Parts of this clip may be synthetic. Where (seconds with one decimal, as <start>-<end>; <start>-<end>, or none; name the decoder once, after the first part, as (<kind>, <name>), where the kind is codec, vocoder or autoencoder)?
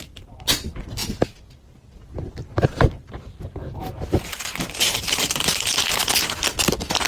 2.5-5.8 (vocoder, BigVGAN v2)